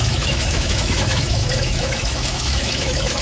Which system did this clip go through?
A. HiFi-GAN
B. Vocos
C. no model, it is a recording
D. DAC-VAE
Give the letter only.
D